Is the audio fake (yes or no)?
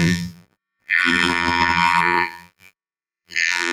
yes